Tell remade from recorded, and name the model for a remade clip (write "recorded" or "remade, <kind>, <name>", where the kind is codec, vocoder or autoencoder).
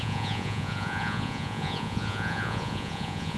remade, vocoder, Vocos